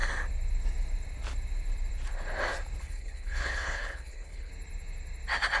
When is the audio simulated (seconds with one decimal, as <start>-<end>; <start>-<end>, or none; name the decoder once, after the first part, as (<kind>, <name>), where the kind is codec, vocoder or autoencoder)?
2.8-4.5 (codec, HILCodec)